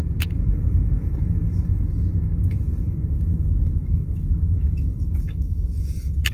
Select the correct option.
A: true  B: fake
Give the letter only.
B